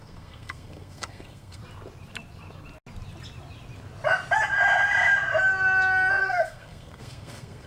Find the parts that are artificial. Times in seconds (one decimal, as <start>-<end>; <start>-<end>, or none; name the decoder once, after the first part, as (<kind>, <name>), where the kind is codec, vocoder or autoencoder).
0.0-1.6 (codec, SNAC); 6.2-7.7